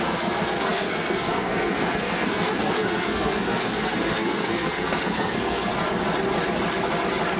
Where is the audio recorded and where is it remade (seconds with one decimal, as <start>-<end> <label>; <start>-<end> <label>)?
0.0-5.7 remade; 5.7-7.4 recorded